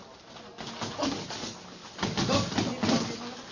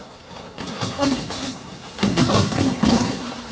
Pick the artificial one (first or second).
second